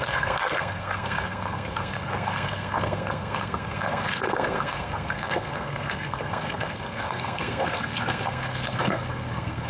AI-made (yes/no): yes